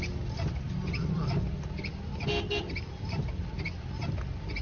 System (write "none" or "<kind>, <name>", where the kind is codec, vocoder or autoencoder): none